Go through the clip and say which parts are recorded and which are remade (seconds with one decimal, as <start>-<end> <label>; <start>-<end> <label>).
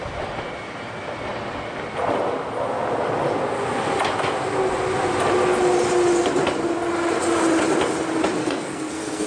0.0-8.4 recorded; 8.4-9.3 remade